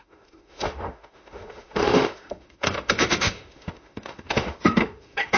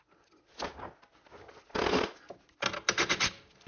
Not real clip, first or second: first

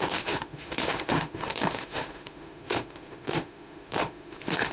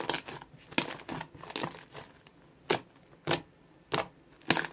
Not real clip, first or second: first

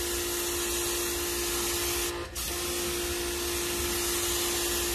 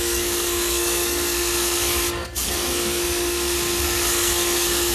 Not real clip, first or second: second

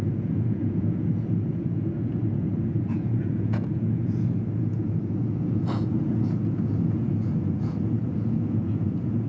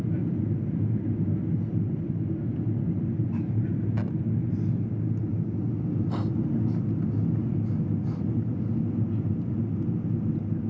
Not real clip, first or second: first